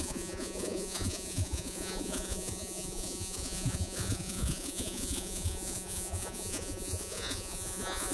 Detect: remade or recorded remade